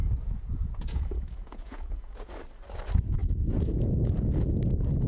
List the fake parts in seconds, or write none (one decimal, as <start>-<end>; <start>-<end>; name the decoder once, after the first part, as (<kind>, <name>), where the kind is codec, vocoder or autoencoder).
0.0-2.3 (vocoder, Vocos); 3.2-4.3